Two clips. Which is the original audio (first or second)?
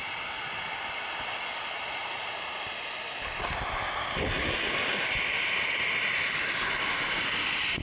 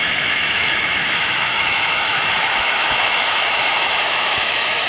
first